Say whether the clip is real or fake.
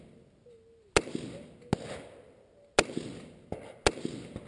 real